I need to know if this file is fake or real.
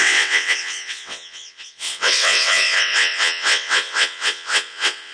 fake